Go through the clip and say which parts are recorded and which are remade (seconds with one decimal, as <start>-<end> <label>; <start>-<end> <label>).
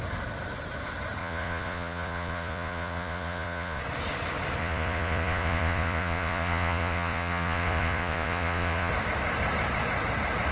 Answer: 0.0-1.2 recorded; 1.2-3.8 remade; 3.8-4.6 recorded; 4.6-8.9 remade; 8.9-10.5 recorded